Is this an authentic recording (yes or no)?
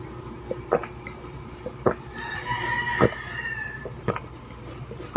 yes